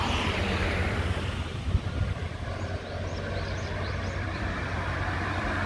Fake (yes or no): yes